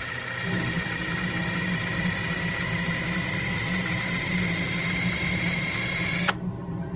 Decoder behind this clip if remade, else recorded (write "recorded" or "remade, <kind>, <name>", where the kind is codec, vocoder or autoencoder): recorded